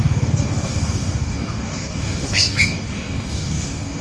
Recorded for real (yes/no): no